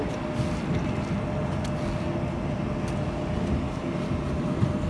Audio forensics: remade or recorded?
recorded